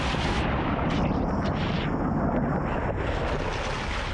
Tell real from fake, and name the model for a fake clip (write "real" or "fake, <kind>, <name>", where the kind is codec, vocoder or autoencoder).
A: real